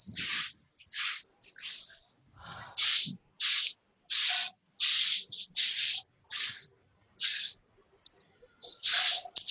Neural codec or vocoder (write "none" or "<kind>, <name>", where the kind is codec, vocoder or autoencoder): vocoder, BigVGAN v2